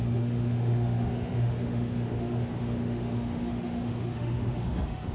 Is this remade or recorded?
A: remade